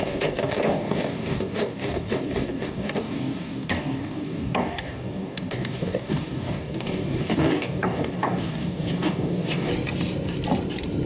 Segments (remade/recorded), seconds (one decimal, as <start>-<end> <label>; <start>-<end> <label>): 0.0-9.7 remade; 9.7-11.1 recorded